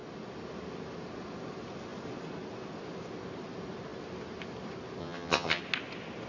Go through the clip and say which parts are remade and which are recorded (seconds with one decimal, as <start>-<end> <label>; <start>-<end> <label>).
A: 0.0-5.0 recorded; 5.0-5.6 remade; 5.6-6.3 recorded

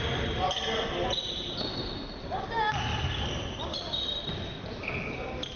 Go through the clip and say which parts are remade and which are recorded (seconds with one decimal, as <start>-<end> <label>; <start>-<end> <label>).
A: 0.0-5.6 recorded

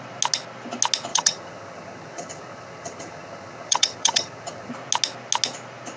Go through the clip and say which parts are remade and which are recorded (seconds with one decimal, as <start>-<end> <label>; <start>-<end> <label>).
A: 0.0-1.1 recorded; 1.1-4.7 remade; 4.7-6.0 recorded